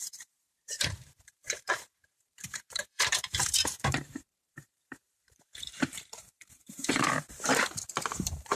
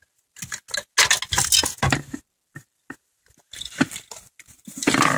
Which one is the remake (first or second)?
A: first